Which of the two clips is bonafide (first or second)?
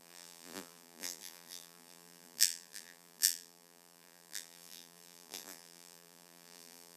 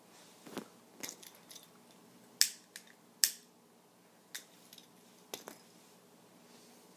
second